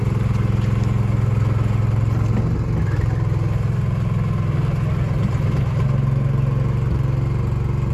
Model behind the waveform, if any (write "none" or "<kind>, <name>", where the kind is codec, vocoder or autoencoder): none